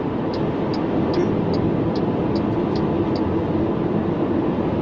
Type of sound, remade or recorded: recorded